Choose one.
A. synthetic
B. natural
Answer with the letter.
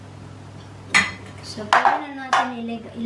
B